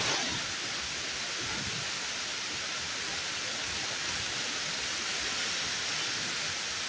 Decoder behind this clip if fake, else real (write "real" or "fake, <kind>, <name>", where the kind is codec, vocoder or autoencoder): real